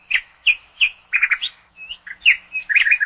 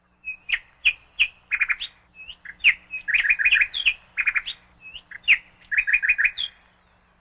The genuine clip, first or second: second